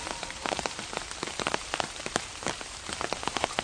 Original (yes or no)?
no